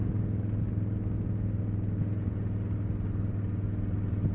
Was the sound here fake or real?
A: real